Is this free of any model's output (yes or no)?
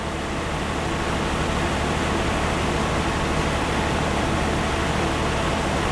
yes